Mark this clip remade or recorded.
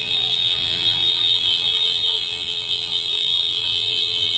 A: remade